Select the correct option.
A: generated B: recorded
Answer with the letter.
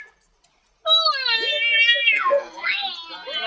B